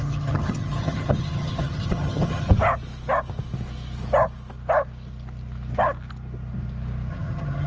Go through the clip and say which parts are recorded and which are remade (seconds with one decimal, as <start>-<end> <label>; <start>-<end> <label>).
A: 0.0-2.5 remade; 2.5-7.1 recorded; 7.1-7.7 remade